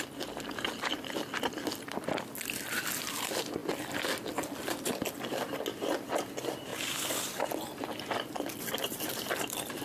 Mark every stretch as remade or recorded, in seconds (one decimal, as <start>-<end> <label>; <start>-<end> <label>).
0.0-9.8 recorded